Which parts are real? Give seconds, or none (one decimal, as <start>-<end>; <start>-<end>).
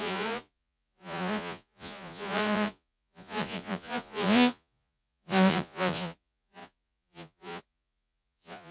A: none